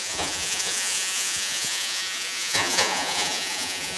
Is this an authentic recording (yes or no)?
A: no